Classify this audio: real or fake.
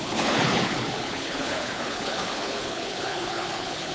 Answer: fake